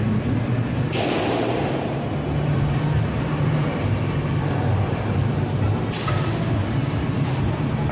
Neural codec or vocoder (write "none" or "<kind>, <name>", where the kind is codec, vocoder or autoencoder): vocoder, BigVGAN v2